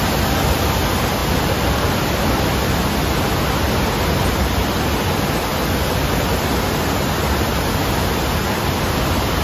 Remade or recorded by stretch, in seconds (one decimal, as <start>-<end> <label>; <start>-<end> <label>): 0.0-1.2 recorded; 1.2-2.4 remade; 2.4-9.4 recorded